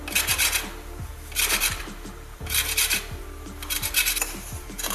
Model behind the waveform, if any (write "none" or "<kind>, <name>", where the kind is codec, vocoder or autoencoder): vocoder, BigVGAN v2